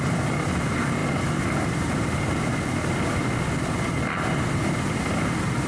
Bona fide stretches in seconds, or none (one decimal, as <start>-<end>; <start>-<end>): 0.0-5.7